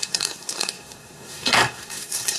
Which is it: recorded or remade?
remade